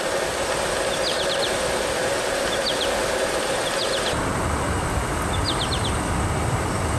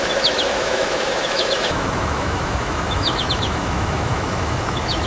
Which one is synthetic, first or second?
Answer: second